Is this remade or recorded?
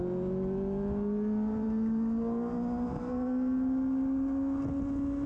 recorded